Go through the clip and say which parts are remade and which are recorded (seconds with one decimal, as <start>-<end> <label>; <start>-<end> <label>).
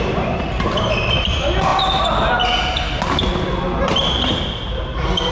0.0-5.3 recorded